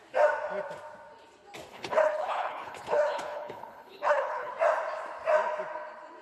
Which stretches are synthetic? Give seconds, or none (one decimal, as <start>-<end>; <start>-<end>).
1.7-4.5